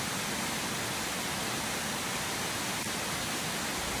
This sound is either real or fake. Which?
fake